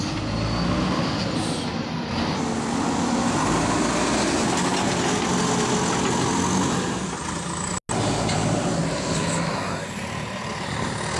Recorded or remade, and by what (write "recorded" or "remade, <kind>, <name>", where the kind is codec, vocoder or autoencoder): recorded